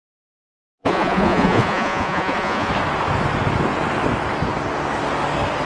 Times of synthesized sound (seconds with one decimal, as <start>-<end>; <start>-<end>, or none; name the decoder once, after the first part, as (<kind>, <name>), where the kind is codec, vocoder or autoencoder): 0.8-2.7 (vocoder, Vocos)